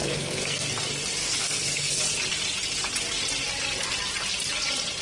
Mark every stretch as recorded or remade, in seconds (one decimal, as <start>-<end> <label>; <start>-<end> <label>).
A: 0.0-0.7 remade; 0.7-1.2 recorded; 1.2-2.0 remade; 2.0-5.0 recorded